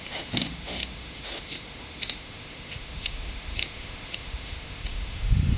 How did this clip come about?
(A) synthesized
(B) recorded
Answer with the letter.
A